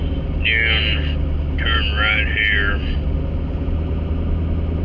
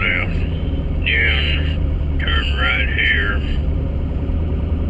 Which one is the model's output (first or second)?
second